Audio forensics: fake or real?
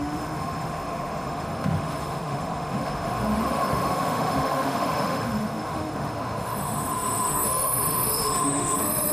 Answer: fake